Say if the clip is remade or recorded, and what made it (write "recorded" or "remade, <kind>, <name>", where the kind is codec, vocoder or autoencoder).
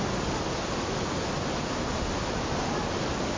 recorded